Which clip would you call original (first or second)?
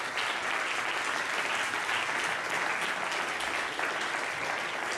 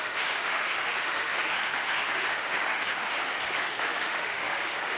first